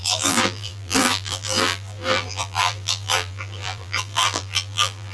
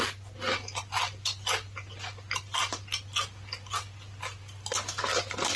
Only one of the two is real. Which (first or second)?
second